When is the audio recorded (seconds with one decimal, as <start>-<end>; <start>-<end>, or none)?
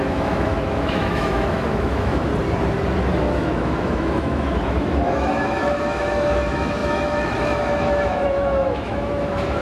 2.3-3.2